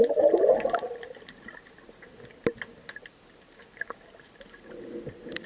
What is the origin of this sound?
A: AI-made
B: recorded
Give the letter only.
B